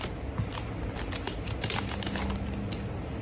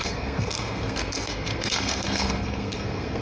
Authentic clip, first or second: first